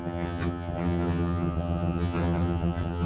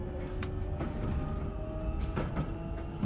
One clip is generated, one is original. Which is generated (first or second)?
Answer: first